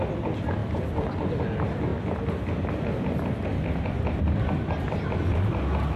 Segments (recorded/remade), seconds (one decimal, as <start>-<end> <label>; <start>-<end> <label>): 0.0-6.0 recorded